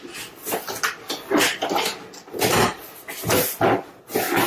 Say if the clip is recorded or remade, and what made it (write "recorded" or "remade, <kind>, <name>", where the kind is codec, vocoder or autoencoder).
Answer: recorded